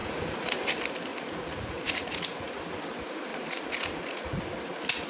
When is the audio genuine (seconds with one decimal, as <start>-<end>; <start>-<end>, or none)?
0.7-1.1; 2.6-3.3; 4.4-5.1